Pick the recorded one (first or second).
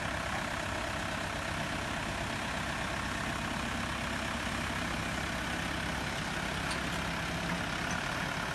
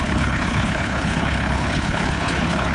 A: first